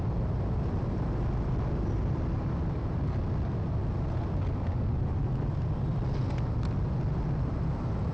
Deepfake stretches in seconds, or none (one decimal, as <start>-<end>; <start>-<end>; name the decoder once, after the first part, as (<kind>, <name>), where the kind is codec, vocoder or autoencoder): none